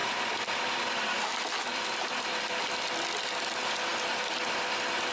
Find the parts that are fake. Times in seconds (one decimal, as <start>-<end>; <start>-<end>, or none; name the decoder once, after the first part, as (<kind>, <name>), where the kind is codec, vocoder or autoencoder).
0.0-0.8 (vocoder, BigVGAN v2); 1.7-2.5